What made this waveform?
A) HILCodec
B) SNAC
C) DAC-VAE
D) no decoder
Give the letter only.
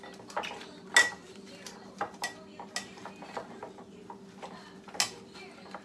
D